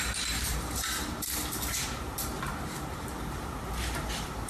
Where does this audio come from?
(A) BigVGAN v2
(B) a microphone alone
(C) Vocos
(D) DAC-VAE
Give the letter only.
A